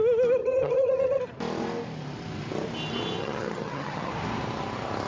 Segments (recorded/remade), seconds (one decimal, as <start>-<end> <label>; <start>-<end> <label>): 0.0-0.4 recorded; 0.4-1.2 remade; 1.2-3.2 recorded; 3.2-4.1 remade; 4.1-5.1 recorded